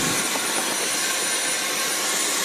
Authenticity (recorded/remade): recorded